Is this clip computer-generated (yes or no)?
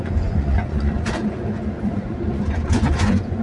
yes